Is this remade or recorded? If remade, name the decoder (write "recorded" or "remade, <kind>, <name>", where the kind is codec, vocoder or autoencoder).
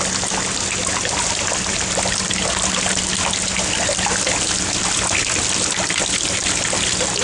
recorded